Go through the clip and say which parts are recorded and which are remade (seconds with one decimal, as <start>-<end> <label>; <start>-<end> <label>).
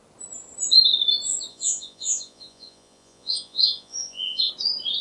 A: 0.0-1.5 recorded; 1.5-4.5 remade; 4.5-5.0 recorded